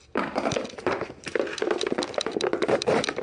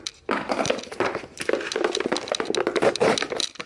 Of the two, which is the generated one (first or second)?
first